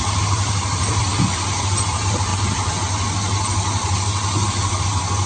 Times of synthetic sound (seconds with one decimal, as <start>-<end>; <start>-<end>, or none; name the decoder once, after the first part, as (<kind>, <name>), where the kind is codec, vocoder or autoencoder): 0.0-1.1 (vocoder, BigVGAN v2); 1.7-2.3; 4.8-5.3